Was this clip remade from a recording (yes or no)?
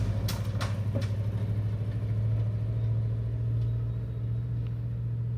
no